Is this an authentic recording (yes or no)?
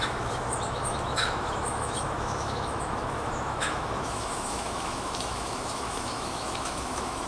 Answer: no